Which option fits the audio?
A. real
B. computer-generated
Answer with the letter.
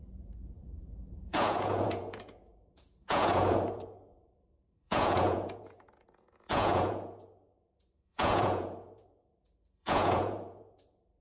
B